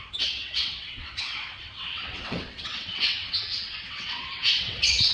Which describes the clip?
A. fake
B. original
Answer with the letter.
A